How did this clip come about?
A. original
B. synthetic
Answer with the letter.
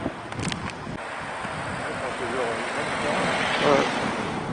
A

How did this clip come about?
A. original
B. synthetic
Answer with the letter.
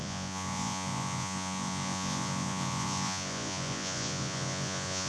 B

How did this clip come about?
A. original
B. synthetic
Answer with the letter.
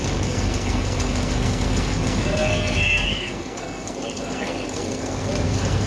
B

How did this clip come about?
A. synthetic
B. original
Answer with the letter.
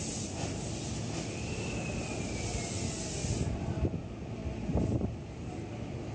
B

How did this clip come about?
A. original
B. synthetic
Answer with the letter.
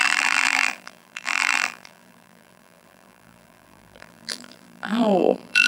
B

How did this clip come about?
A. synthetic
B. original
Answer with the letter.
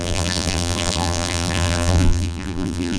A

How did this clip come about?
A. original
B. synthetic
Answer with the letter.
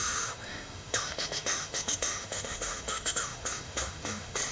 B